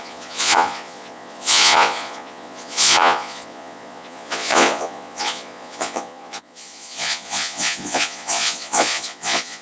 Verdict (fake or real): fake